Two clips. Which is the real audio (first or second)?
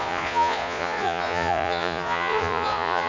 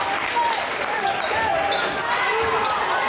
second